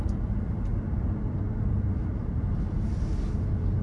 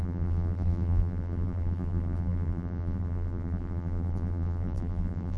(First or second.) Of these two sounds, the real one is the first